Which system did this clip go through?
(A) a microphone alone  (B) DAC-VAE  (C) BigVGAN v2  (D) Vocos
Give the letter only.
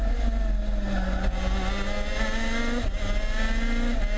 A